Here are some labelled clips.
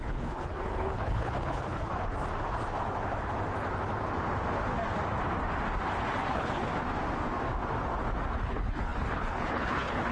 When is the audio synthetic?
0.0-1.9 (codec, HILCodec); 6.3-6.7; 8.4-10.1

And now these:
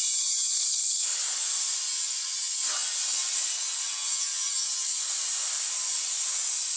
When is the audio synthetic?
0.7-1.2 (codec, HILCodec)

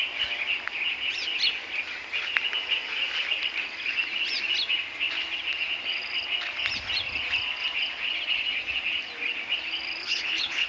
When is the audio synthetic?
10.0-10.7 (codec, HILCodec)

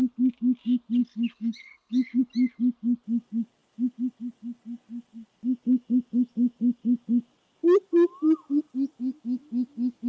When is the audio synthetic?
1.0-2.2 (codec, HILCodec)

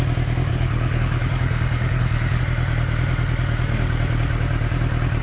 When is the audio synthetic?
0.5-2.4 (codec, HILCodec)